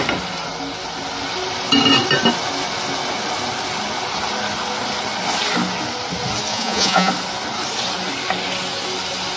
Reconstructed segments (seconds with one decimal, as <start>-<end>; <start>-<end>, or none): 6.5-7.1